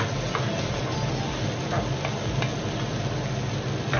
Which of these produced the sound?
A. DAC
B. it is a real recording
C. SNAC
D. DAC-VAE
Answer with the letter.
B